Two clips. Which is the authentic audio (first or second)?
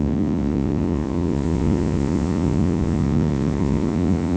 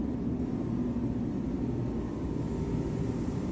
second